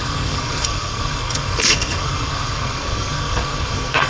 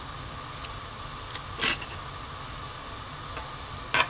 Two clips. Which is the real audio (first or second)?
second